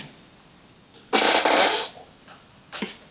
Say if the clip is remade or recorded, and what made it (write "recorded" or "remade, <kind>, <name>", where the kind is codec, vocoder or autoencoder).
recorded